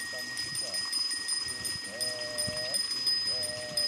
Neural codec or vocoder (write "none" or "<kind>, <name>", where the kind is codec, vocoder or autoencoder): none